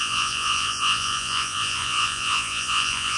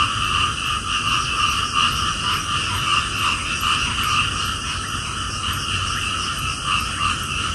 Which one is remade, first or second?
first